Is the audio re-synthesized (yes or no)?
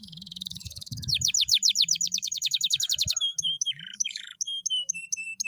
yes